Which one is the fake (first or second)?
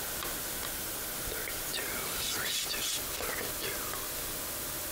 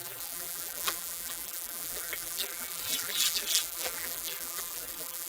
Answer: second